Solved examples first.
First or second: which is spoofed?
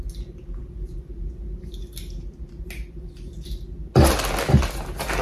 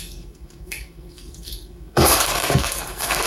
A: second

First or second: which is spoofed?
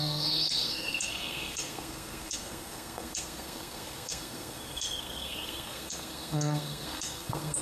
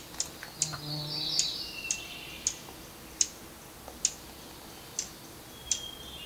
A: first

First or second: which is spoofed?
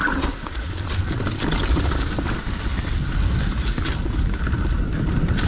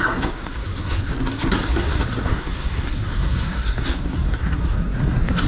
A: second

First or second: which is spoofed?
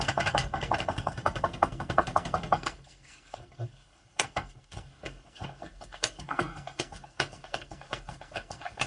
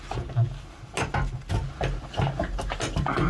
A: first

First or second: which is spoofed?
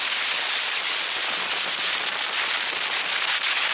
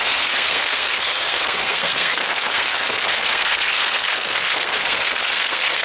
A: second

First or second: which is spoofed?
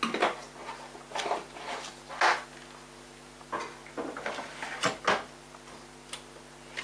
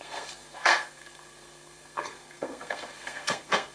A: second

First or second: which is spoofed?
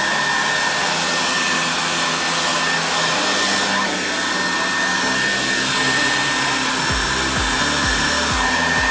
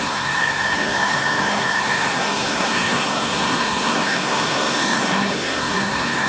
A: second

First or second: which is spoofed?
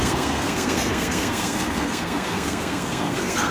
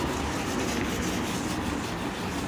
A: first